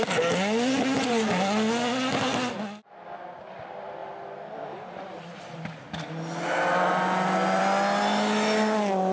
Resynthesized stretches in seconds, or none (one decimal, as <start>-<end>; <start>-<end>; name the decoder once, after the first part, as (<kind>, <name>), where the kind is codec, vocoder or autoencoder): none